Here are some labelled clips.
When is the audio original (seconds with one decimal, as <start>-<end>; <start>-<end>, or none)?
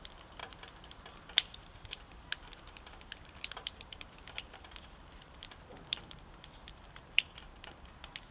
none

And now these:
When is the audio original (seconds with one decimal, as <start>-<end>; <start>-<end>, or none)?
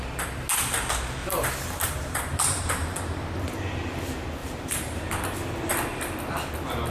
0.0-1.2; 2.6-4.4; 5.0-6.9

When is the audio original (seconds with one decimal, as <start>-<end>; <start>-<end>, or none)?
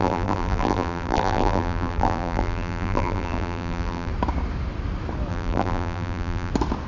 4.1-5.3; 6.5-6.9